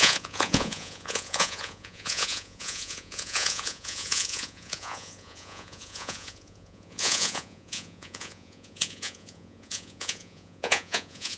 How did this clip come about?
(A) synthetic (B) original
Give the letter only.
A